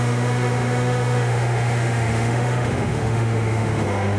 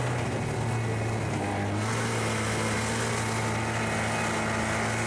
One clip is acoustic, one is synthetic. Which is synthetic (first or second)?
first